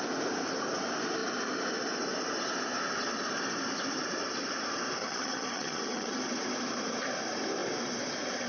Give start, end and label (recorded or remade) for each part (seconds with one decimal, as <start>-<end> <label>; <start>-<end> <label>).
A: 0.0-5.0 recorded; 5.0-6.2 remade; 6.2-8.5 recorded